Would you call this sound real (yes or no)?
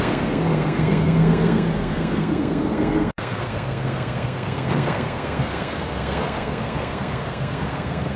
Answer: no